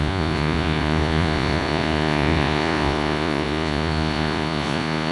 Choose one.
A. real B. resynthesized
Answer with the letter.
B